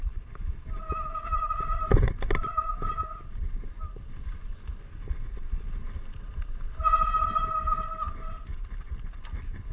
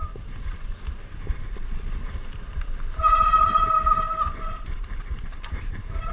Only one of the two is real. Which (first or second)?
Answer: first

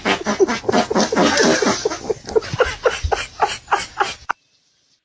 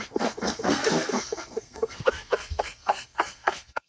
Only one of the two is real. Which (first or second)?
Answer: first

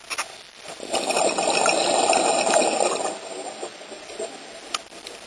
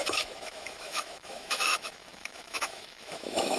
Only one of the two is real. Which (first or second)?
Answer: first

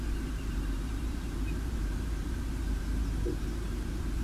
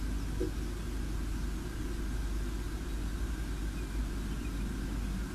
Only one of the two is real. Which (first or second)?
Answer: second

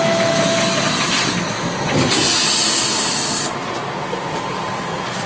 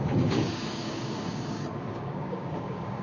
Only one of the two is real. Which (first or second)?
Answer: first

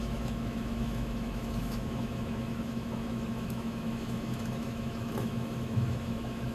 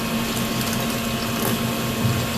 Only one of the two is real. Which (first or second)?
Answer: second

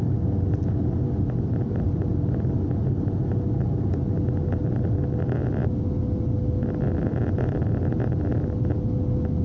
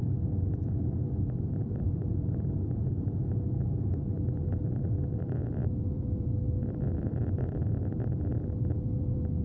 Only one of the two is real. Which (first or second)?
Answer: first